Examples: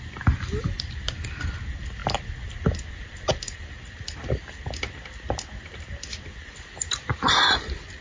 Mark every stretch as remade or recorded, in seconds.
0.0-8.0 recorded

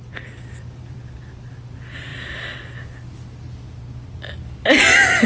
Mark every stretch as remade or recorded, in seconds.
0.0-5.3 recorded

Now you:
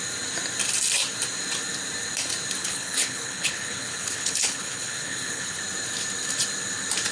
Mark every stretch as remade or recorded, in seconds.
0.0-2.6 recorded; 2.6-5.6 remade; 5.6-7.1 recorded

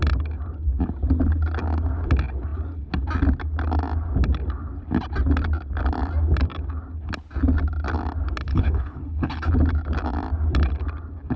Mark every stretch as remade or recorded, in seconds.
0.0-8.5 recorded; 8.5-9.5 remade; 9.5-11.4 recorded

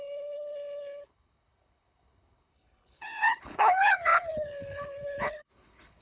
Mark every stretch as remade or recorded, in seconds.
0.0-6.0 remade